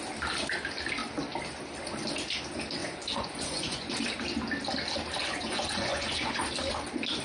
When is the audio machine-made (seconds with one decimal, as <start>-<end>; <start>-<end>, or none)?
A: 2.8-3.9; 5.2-6.4